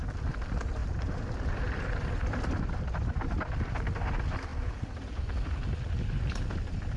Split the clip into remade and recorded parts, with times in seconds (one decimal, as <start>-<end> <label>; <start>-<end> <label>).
0.0-0.8 recorded; 0.8-3.7 remade; 3.7-4.5 recorded; 4.5-5.9 remade; 5.9-7.0 recorded